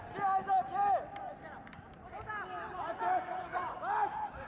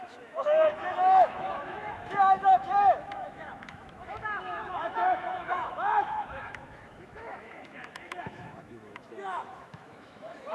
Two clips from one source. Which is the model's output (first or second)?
second